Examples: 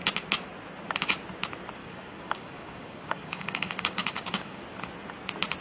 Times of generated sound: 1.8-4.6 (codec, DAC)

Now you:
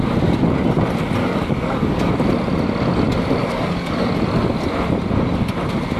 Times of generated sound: 1.2-2.1 (codec, DAC); 3.4-4.1

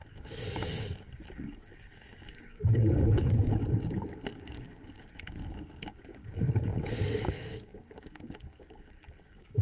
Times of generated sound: 0.0-3.6 (codec, DAC); 4.3-9.6

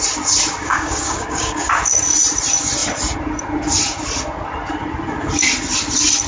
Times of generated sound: 0.6-1.7 (codec, DAC)

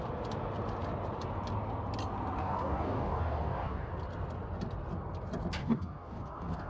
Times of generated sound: 2.4-3.9 (codec, DAC); 5.6-6.7

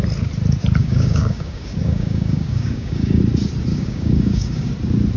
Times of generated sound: 0.8-3.2 (codec, DAC); 3.7-4.7

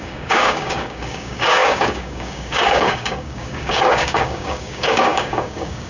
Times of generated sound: 0.0-5.9 (codec, DAC)

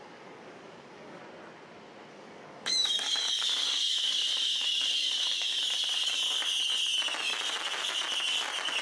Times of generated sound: 0.0-1.2 (codec, DAC); 2.1-6.2